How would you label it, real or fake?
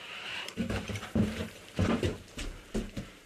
fake